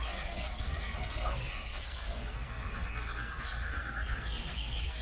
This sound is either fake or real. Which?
fake